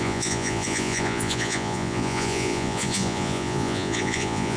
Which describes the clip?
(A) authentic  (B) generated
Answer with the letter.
B